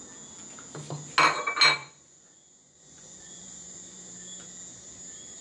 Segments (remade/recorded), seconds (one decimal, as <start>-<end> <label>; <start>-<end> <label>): 0.0-1.8 recorded; 1.8-4.0 remade; 4.0-5.4 recorded